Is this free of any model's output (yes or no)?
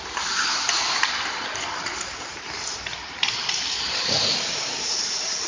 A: yes